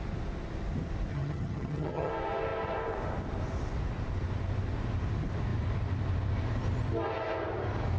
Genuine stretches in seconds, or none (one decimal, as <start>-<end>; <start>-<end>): 0.0-1.1; 2.1-8.0